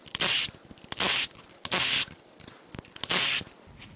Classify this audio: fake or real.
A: real